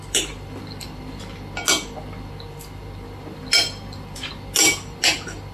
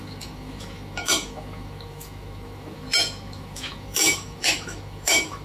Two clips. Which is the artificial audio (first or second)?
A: second